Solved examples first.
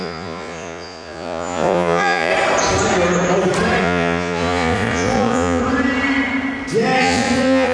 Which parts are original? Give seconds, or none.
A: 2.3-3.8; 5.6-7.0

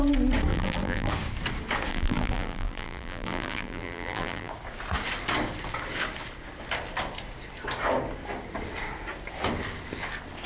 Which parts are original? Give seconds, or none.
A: 0.0-0.5; 1.1-1.9; 4.5-10.5

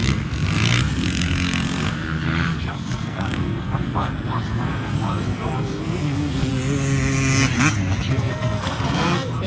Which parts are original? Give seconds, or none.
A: 6.5-8.1

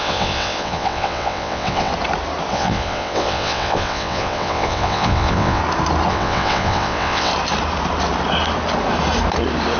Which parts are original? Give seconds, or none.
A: 1.9-2.5; 5.6-6.1; 7.3-9.8

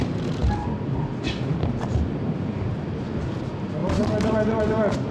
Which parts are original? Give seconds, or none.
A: 0.0-3.8; 4.6-5.1

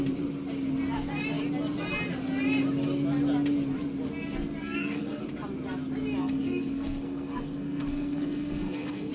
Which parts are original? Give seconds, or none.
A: 0.0-4.6; 5.2-6.2

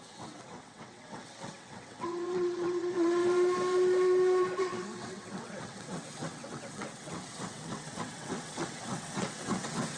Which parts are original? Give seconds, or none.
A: 3.2-4.6

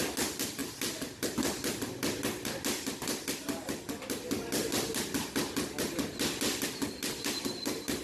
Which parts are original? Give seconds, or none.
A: 0.0-8.0